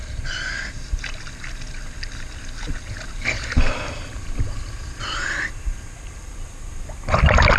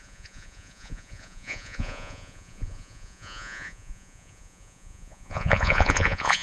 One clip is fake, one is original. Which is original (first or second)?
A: first